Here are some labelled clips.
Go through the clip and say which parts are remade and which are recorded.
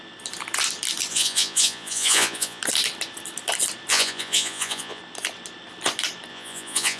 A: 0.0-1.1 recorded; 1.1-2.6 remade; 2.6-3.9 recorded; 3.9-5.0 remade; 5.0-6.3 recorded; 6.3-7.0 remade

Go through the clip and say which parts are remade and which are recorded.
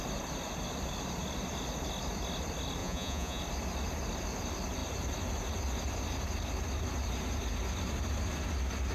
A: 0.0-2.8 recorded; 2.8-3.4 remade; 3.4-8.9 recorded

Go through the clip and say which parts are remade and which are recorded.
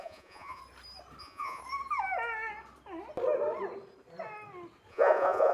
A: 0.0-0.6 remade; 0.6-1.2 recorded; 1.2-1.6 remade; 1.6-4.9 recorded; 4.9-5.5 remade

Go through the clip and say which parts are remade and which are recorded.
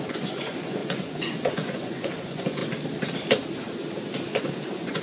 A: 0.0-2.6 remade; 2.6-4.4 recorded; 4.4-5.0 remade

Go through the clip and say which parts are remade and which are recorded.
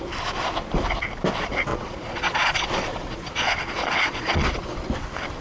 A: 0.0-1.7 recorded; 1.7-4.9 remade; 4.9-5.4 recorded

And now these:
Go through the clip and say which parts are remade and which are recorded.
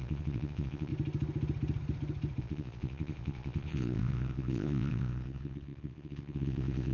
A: 0.0-0.9 remade; 0.9-2.4 recorded; 2.4-6.9 remade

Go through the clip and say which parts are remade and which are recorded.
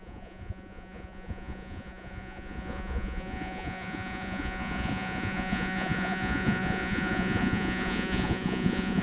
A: 0.0-9.0 remade